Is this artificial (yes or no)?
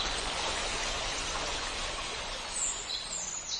yes